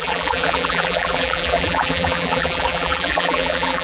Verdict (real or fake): fake